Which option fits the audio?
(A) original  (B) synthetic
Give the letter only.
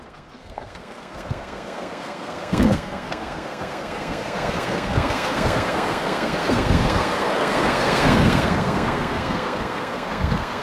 B